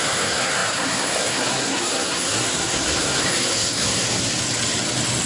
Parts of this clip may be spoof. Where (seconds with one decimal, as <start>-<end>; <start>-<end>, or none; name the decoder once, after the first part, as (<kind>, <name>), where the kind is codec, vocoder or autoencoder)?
0.0-4.3 (codec, SNAC)